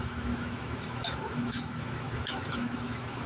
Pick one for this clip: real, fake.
fake